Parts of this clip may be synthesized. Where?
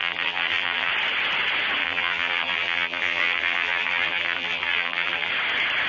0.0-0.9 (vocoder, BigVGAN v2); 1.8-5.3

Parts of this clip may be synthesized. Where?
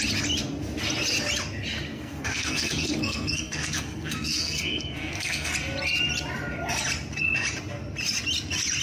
1.9-5.5 (codec, SNAC)